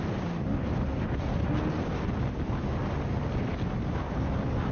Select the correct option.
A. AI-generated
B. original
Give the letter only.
B